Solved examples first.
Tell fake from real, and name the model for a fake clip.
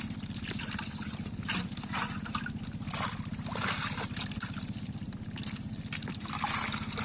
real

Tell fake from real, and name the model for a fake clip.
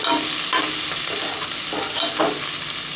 real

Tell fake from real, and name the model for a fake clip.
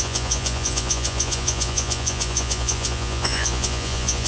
fake, vocoder, Vocos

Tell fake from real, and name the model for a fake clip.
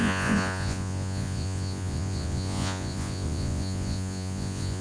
fake, vocoder, Vocos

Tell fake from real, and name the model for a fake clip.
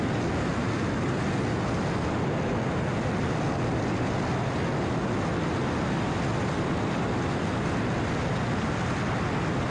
real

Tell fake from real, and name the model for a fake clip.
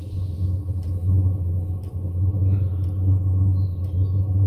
real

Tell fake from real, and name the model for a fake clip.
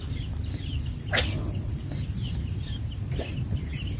real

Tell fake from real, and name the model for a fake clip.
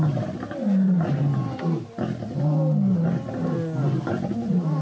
real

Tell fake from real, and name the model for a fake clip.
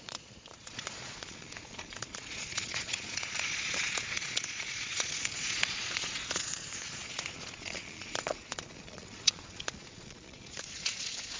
fake, vocoder, Vocos